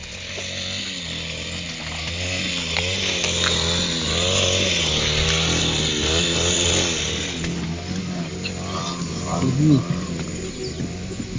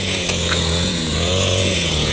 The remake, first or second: second